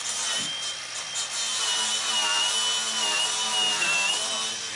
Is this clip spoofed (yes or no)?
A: no